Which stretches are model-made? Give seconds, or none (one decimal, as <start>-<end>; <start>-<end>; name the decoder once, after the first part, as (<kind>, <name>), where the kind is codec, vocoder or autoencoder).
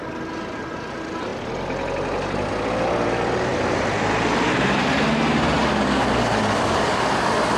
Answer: 5.6-7.1 (codec, DAC)